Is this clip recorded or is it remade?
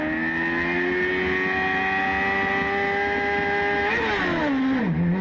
recorded